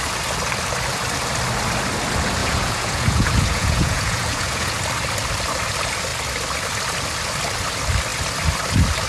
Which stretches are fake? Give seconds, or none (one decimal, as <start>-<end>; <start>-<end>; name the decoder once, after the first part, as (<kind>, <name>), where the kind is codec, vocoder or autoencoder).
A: 2.4-4.8 (vocoder, Vocos)